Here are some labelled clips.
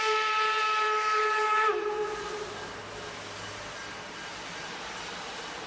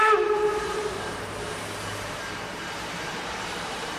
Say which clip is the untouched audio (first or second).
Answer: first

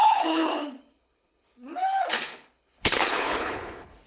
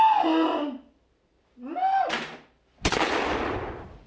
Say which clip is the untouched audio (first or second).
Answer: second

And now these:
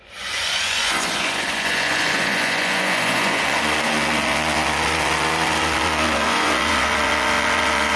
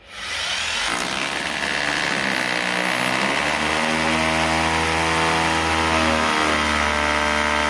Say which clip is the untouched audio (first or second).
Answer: second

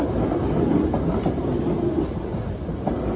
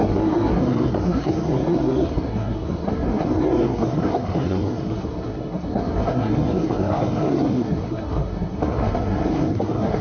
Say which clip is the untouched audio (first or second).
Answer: first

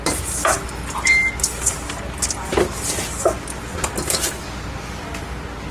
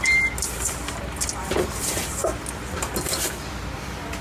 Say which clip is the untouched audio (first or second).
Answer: first